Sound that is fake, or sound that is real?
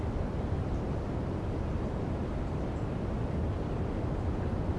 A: real